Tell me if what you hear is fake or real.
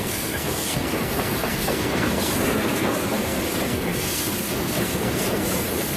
fake